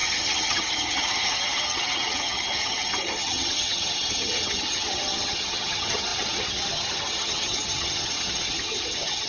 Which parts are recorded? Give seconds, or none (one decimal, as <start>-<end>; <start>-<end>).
none